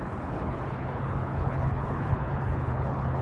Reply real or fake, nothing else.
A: fake